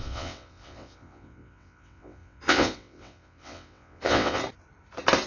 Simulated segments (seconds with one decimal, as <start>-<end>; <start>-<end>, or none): 0.0-4.4